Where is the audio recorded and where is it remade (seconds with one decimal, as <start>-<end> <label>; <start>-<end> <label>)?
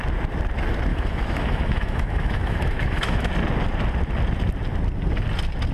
0.0-0.9 recorded; 0.9-3.3 remade; 3.3-5.7 recorded